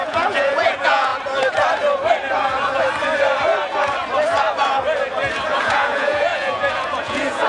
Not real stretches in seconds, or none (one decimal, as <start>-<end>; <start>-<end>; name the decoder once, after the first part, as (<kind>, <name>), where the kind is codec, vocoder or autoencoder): 0.0-1.1 (vocoder, Vocos); 5.6-7.5